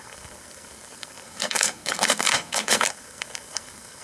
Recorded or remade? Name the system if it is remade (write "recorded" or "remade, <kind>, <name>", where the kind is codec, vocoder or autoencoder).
remade, codec, SNAC